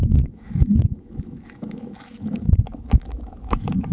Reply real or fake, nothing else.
fake